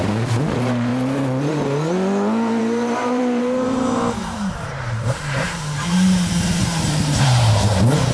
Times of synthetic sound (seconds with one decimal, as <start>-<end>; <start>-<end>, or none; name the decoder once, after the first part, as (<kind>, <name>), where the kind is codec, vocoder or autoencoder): 0.0-0.9 (vocoder, BigVGAN v2); 2.6-8.1

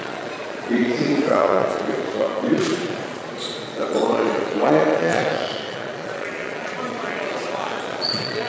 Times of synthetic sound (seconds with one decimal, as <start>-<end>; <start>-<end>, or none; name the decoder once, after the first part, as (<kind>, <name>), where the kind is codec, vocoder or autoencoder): 0.0-8.5 (vocoder, Vocos)

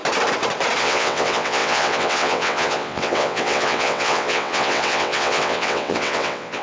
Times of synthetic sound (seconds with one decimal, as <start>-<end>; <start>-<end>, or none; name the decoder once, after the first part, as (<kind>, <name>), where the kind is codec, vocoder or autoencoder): 0.8-6.6 (vocoder, WaveNeXt)

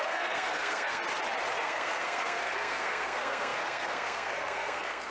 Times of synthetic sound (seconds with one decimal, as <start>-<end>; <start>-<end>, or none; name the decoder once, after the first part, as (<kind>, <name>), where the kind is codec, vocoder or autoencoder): 0.0-1.0 (codec, SNAC); 1.6-5.1

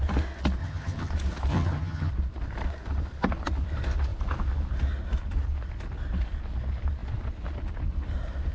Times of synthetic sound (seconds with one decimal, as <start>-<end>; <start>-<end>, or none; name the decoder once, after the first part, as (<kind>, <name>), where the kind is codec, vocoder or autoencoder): 0.6-1.1 (vocoder, HiFi-GAN); 1.5-2.1

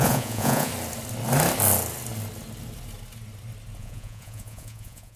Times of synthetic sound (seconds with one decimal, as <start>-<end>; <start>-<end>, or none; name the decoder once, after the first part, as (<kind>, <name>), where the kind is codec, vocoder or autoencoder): 0.0-0.7 (vocoder, Vocos); 3.8-5.2

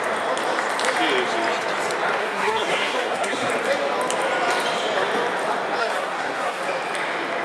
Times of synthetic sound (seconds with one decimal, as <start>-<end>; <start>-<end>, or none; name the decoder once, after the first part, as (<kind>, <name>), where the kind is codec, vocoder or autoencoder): 2.2-3.5 (codec, SNAC); 5.8-6.6